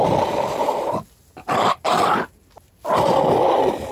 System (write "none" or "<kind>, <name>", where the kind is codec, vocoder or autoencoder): none